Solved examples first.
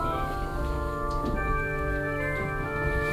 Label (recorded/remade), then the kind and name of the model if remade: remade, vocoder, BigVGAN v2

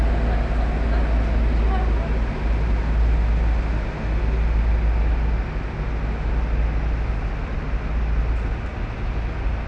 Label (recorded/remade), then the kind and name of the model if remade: recorded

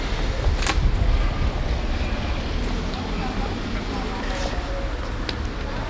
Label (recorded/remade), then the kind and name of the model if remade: recorded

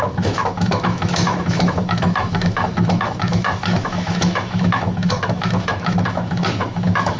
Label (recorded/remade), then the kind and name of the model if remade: remade, autoencoder, DAC-VAE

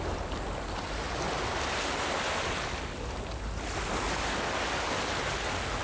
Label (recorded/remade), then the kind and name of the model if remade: recorded